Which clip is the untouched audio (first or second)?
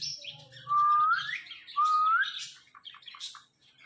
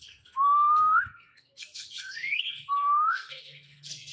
first